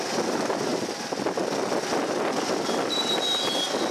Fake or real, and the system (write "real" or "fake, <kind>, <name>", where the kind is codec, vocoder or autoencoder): real